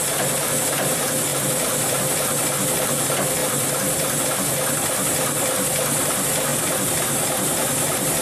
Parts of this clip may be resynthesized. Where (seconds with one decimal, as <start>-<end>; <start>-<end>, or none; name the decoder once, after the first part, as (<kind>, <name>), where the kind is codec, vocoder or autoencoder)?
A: 1.3-2.0 (vocoder, BigVGAN v2); 3.4-4.2; 6.5-8.2